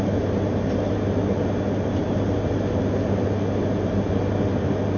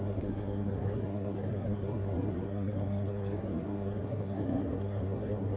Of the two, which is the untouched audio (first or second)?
first